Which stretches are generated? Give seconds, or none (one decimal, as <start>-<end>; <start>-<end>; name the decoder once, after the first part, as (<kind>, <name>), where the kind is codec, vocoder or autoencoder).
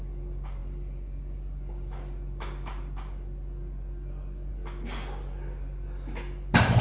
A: none